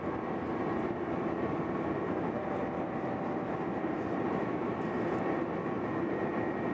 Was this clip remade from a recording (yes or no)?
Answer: yes